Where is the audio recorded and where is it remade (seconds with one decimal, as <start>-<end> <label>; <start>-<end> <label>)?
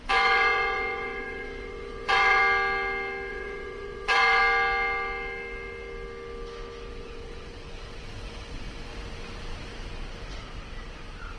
0.0-2.4 remade; 2.4-3.3 recorded; 3.3-4.4 remade; 4.4-6.9 recorded; 6.9-8.9 remade; 8.9-11.4 recorded